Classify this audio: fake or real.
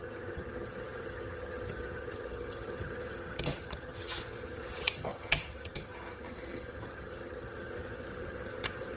fake